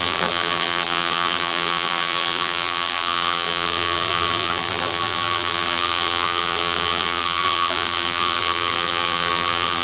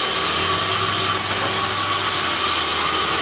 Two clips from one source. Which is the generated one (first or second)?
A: first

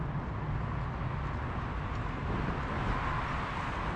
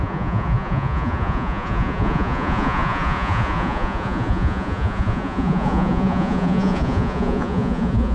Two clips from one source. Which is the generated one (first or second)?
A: second